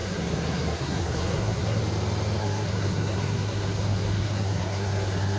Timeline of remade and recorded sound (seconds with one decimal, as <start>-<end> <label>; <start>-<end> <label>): 0.0-1.8 remade; 1.8-2.4 recorded; 2.4-5.4 remade